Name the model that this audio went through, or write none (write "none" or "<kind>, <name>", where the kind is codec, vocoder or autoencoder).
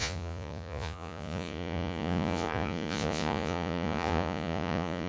vocoder, Vocos